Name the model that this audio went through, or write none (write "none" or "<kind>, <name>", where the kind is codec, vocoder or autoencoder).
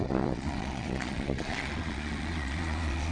vocoder, Vocos